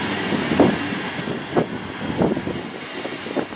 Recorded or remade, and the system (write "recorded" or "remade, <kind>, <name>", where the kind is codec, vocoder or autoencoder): recorded